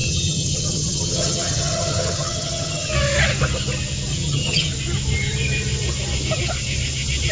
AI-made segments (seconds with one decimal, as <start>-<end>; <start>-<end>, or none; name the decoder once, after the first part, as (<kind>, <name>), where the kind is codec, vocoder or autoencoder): 0.0-2.9 (vocoder, HiFi-GAN); 4.1-4.7